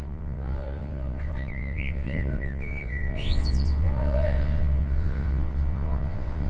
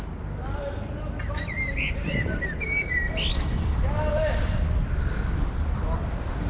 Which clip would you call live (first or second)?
second